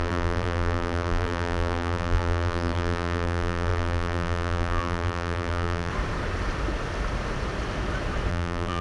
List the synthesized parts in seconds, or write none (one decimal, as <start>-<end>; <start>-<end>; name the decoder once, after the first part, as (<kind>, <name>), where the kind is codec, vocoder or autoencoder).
0.0-5.9 (vocoder, BigVGAN v2); 8.3-8.8